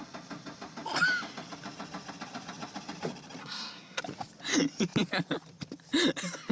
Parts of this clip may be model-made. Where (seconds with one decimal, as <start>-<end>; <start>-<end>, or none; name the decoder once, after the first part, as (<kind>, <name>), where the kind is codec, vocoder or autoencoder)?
3.4-4.0 (codec, SNAC)